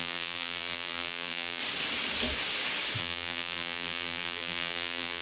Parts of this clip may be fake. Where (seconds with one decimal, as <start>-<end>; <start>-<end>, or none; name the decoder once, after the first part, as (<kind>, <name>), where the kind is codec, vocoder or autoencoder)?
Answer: 0.0-1.6 (vocoder, BigVGAN v2); 3.0-5.2